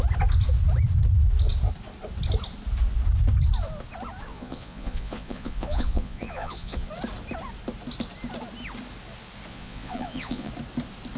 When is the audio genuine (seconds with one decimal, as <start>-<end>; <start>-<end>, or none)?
0.0-4.3; 6.9-9.5; 10.5-11.2